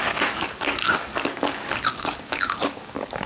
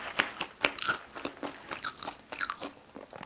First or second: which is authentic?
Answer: second